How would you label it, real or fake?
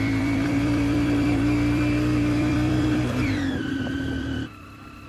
fake